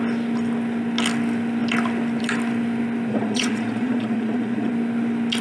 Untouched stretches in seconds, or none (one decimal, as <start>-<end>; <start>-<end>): 0.0-3.1; 4.7-5.4